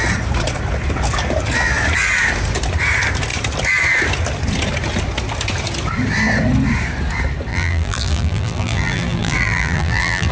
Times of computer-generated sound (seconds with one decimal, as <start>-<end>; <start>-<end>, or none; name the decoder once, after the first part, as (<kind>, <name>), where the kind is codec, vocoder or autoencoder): 7.5-10.3 (vocoder, BigVGAN v2)